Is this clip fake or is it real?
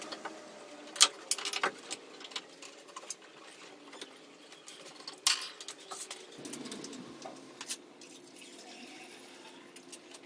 real